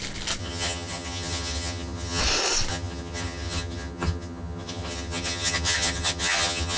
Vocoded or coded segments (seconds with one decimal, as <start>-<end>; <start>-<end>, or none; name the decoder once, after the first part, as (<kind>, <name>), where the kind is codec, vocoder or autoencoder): 0.4-2.2 (vocoder, HiFi-GAN); 2.7-6.8